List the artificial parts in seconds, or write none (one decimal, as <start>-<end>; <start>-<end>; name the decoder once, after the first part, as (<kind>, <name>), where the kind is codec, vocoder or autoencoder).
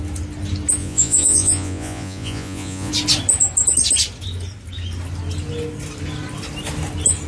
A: 0.8-2.9 (vocoder, Vocos)